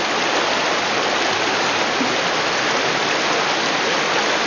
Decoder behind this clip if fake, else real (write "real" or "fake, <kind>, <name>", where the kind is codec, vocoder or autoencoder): real